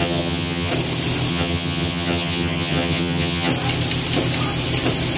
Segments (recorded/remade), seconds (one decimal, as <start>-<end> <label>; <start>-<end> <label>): 0.0-0.7 remade; 0.7-1.3 recorded; 1.3-3.5 remade; 3.5-5.2 recorded

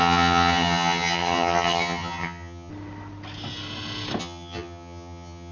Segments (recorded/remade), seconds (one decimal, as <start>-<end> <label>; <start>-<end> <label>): 0.0-2.7 remade; 2.7-4.2 recorded; 4.2-5.5 remade